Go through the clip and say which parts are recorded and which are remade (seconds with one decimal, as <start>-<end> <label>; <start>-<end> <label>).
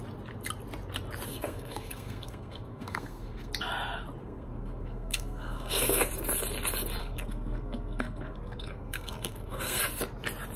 0.0-1.3 recorded; 1.3-3.5 remade; 3.5-4.2 recorded; 4.2-6.1 remade; 6.1-7.0 recorded; 7.0-9.8 remade; 9.8-10.6 recorded